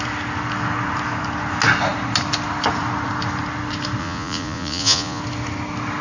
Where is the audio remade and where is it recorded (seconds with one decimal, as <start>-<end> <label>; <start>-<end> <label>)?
0.0-4.0 recorded; 4.0-5.2 remade; 5.2-6.0 recorded